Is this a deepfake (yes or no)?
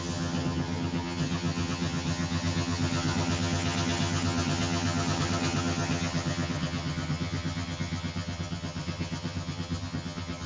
yes